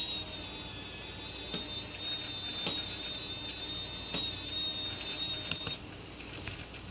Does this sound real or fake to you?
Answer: real